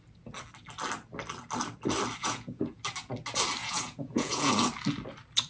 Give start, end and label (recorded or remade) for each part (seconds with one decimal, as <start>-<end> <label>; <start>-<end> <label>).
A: 0.0-2.2 recorded; 2.2-2.8 remade; 2.8-3.6 recorded; 3.6-4.5 remade; 4.5-5.5 recorded